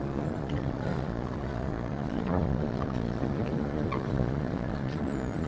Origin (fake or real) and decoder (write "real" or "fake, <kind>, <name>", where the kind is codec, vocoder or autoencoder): fake, vocoder, Vocos